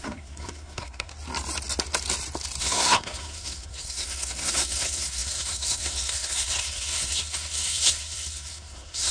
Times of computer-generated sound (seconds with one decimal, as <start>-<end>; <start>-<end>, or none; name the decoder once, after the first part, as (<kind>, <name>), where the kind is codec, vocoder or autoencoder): 0.0-1.1 (codec, SNAC); 2.6-9.1